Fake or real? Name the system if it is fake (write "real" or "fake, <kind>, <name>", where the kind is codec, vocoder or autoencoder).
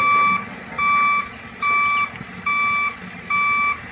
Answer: real